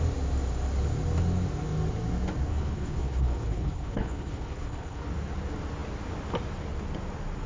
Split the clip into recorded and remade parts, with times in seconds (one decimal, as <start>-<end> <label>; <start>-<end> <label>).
0.0-2.5 recorded; 2.5-5.1 remade; 5.1-7.5 recorded